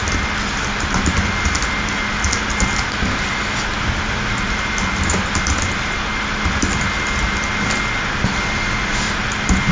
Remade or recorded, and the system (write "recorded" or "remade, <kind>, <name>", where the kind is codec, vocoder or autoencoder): recorded